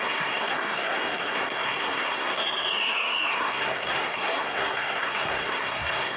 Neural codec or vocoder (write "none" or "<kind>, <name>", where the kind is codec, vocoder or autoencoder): codec, SNAC